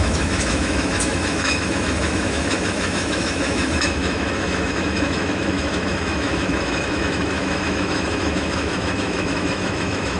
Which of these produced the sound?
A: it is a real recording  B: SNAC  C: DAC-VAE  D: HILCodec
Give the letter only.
C